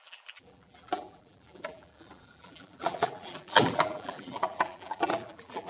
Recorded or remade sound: remade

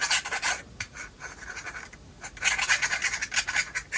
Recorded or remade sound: recorded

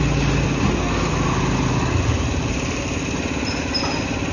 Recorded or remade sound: recorded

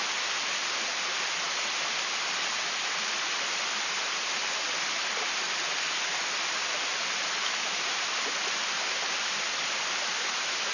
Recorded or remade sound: recorded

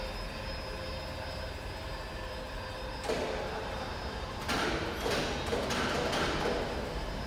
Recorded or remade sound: recorded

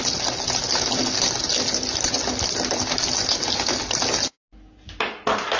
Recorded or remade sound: recorded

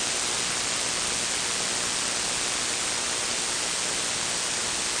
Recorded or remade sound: recorded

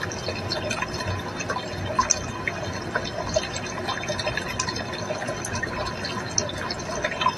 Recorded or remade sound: recorded